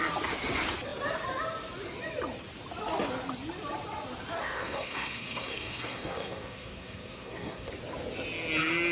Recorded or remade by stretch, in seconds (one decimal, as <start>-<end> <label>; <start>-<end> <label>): 0.0-4.4 recorded; 4.4-7.7 remade; 7.7-8.9 recorded